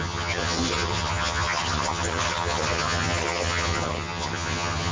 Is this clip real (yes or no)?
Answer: no